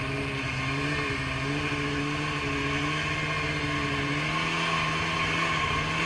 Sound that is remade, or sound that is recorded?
recorded